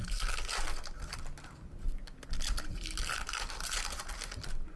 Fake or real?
real